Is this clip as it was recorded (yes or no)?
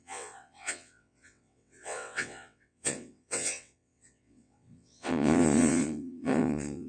no